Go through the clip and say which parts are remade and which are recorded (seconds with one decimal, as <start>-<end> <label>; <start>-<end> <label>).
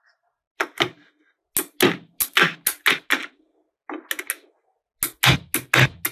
0.0-6.1 recorded